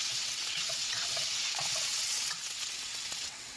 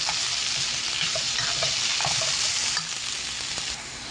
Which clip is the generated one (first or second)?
first